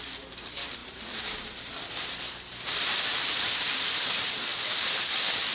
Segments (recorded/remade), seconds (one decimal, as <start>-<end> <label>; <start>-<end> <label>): 0.0-5.5 remade